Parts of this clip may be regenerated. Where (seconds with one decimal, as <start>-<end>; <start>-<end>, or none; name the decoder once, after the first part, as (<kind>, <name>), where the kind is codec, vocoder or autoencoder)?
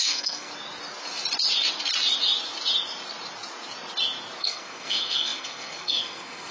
0.0-0.5 (codec, SNAC); 4.4-6.5